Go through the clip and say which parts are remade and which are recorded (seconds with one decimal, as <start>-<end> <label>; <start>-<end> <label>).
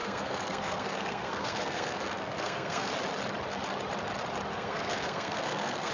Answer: 0.0-2.9 remade; 2.9-4.5 recorded; 4.5-5.9 remade